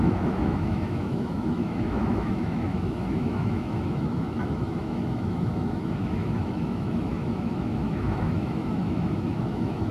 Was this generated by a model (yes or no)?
yes